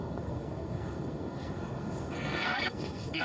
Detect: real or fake fake